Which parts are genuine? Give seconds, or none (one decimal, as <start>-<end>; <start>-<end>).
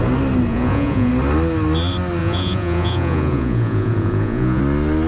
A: 0.0-0.5; 1.1-2.2; 4.6-5.1